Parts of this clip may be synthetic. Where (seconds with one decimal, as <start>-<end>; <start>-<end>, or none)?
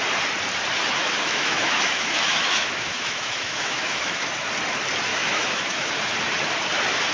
1.0-4.3; 5.1-5.9